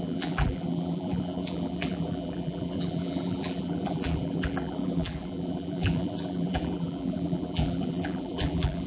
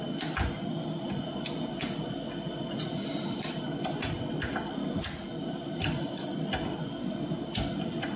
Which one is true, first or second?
second